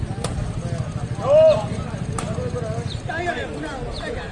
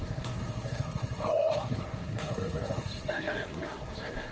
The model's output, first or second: second